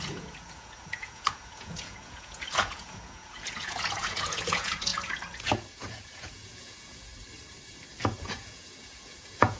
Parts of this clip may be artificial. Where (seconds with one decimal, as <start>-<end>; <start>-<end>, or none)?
0.0-7.1; 8.2-9.6